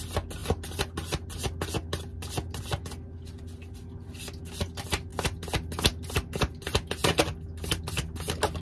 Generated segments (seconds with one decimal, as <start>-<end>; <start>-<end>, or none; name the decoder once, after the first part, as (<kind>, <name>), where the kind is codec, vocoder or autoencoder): none